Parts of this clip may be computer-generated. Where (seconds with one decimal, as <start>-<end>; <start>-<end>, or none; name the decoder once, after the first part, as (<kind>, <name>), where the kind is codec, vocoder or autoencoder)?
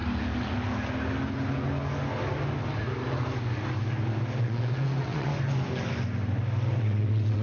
4.4-5.3 (vocoder, WaveNeXt); 6.8-7.4